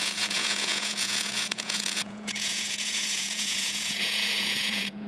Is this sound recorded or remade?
remade